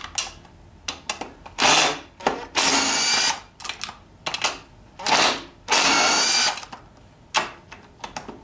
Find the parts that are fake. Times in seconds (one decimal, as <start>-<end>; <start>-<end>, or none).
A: none